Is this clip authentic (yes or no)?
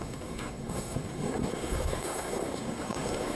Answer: no